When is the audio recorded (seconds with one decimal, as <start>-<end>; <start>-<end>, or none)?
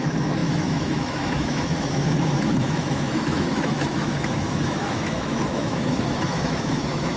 none